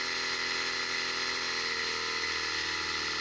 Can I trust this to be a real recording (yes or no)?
yes